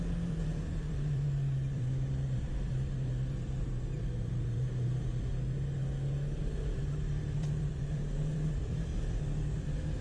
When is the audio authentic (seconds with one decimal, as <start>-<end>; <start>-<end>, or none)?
5.8-6.4; 8.9-10.0